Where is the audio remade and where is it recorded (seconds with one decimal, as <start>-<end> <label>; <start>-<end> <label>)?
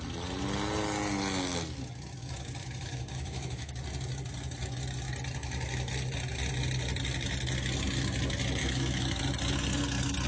0.0-2.2 recorded; 2.2-3.7 remade; 3.7-8.6 recorded; 8.6-9.2 remade; 9.2-10.3 recorded